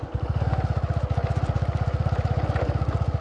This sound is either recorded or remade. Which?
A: recorded